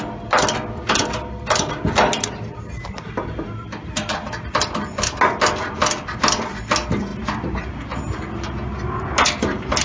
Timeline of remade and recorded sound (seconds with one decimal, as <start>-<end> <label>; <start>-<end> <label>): 0.0-9.8 recorded